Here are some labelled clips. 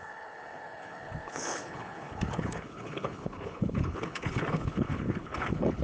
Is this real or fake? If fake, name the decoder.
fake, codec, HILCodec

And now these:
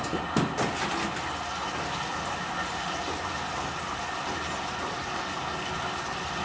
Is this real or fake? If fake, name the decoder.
real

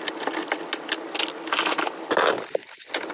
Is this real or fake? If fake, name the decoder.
real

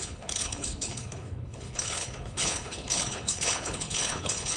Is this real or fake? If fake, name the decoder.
fake, codec, HILCodec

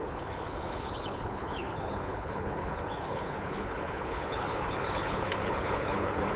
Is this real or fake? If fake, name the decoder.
fake, codec, HILCodec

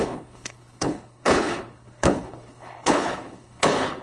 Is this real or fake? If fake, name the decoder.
fake, codec, HILCodec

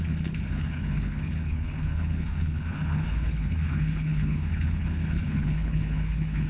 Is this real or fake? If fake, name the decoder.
fake, codec, HILCodec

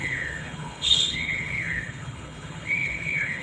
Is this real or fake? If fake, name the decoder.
fake, codec, HILCodec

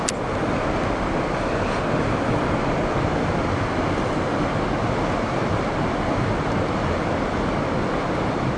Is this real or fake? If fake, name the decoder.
real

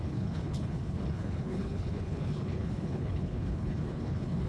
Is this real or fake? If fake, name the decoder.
fake, codec, HILCodec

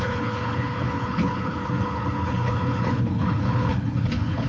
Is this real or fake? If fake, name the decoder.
fake, codec, HILCodec